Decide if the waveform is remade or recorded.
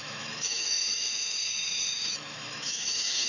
remade